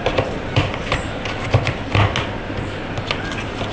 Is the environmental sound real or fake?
real